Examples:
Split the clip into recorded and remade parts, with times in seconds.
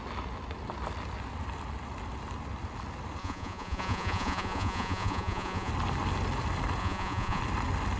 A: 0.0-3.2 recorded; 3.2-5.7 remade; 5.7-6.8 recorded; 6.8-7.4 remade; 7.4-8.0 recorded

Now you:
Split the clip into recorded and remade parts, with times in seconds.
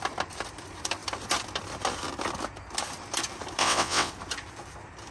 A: 0.0-3.6 recorded; 3.6-4.1 remade; 4.1-5.1 recorded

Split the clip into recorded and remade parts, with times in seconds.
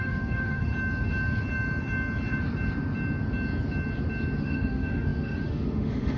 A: 0.0-0.7 remade; 0.7-4.4 recorded; 4.4-6.2 remade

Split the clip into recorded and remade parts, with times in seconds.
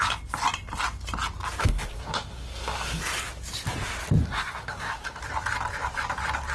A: 0.0-1.6 recorded; 1.6-3.0 remade; 3.0-4.2 recorded; 4.2-5.2 remade; 5.2-6.5 recorded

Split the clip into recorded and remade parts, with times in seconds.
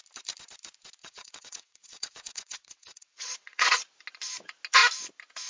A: 0.0-1.0 recorded; 1.0-3.8 remade; 3.8-5.5 recorded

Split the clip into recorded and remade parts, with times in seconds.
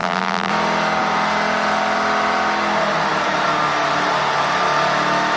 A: 0.0-0.5 remade; 0.5-5.4 recorded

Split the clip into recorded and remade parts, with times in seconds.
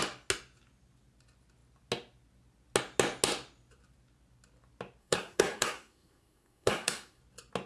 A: 0.0-5.0 recorded; 5.0-7.2 remade; 7.2-7.7 recorded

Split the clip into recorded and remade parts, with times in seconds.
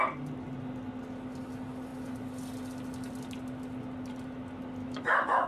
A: 0.0-4.8 recorded; 4.8-5.5 remade